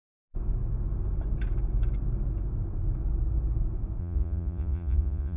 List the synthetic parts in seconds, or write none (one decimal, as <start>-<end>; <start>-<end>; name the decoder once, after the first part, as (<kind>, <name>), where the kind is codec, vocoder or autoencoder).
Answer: 4.0-5.4 (vocoder, Vocos)